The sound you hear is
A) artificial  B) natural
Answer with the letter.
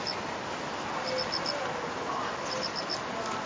B